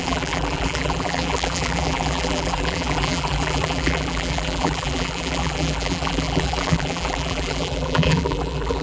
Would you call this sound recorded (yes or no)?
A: no